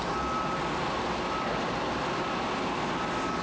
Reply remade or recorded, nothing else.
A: recorded